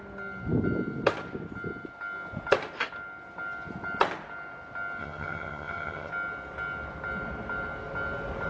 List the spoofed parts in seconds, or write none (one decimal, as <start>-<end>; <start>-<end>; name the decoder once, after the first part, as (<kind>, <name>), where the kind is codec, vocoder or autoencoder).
5.0-6.1 (vocoder, HiFi-GAN)